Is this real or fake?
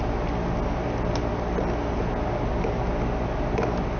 real